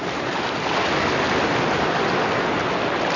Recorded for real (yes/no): yes